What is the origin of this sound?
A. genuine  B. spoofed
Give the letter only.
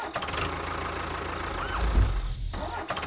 A